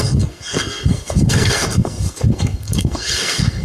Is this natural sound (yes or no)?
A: no